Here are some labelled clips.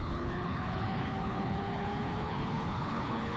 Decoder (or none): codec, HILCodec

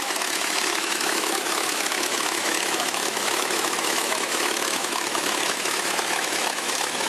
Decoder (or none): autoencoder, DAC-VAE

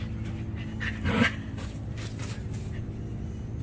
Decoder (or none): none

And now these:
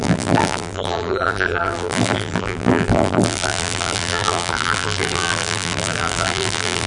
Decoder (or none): vocoder, BigVGAN v2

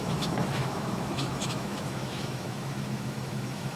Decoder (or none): autoencoder, DAC-VAE